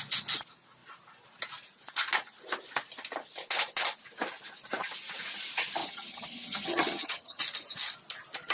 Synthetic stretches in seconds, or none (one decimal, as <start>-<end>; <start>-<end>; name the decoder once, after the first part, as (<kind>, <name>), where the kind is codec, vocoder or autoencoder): 5.8-7.4 (vocoder, HiFi-GAN)

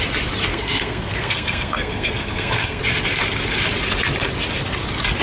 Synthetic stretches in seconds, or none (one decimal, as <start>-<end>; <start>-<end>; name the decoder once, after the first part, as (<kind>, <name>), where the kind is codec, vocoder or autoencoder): 0.5-2.8 (codec, SNAC)

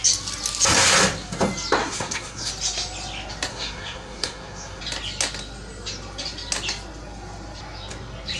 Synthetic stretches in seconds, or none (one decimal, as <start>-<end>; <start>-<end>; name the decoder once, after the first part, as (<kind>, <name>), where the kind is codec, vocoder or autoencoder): 1.8-2.5 (codec, SNAC); 3.5-4.8

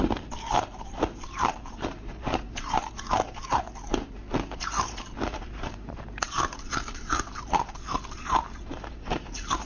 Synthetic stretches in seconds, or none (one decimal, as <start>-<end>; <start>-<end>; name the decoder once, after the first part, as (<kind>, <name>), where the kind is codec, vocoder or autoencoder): 0.0-4.2 (vocoder, BigVGAN v2); 4.8-9.7

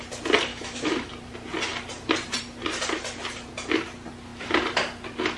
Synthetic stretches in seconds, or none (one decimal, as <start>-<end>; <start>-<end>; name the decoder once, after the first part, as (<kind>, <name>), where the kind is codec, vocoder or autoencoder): 0.5-1.1 (autoencoder, DAC-VAE)